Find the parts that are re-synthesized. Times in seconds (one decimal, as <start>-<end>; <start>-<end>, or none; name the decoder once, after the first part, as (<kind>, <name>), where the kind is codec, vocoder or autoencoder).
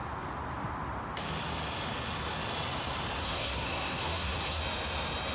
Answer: 3.2-4.6 (codec, SNAC)